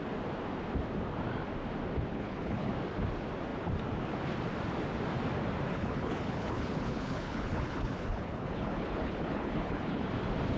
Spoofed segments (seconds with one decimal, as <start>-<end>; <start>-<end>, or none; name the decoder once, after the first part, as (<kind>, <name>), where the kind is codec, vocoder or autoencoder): 2.1-2.7 (codec, HILCodec); 5.7-10.1